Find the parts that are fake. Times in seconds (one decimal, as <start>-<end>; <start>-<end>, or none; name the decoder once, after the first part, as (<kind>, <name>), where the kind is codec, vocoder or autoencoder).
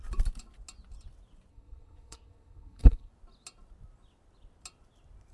1.5-3.1 (codec, SNAC)